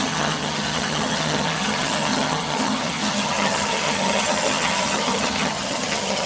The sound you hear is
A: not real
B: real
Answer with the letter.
A